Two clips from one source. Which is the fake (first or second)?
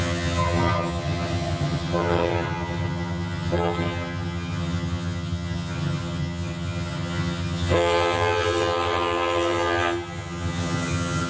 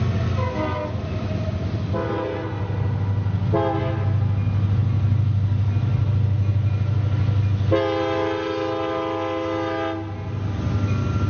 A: first